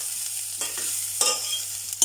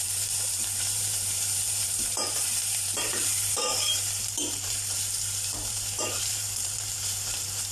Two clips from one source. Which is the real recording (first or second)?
first